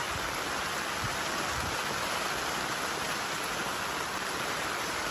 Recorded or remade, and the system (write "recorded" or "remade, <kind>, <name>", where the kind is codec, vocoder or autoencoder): recorded